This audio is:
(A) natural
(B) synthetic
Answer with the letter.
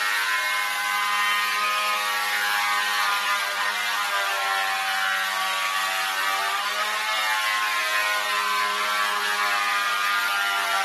A